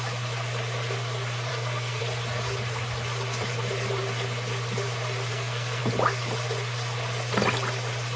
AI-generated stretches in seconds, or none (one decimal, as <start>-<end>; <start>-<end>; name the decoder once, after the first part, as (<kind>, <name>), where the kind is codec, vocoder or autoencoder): 1.5-2.0 (codec, SNAC); 5.3-5.8